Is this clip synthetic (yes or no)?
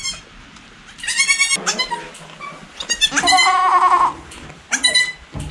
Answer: no